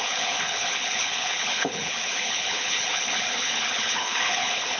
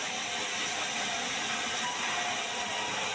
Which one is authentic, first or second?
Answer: second